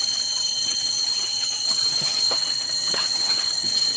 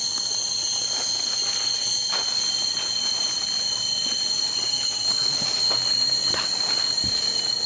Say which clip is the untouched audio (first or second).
second